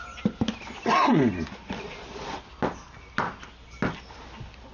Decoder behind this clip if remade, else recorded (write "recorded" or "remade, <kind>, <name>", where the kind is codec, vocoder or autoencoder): recorded